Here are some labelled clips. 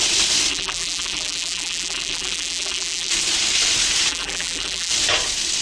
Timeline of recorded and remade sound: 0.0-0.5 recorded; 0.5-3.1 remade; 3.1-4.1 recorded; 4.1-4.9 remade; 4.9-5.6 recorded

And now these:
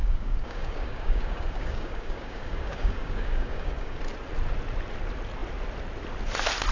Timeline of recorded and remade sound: 0.0-4.0 remade; 4.0-6.7 recorded